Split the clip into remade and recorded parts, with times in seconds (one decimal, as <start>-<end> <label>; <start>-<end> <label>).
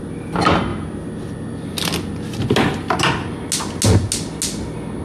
0.0-5.0 recorded